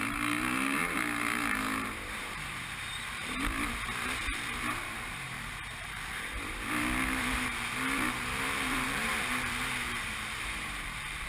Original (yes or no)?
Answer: no